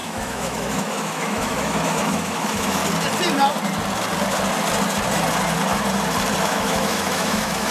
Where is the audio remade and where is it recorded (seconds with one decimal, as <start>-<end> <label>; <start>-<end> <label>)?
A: 0.0-2.8 remade; 2.8-6.4 recorded; 6.4-7.7 remade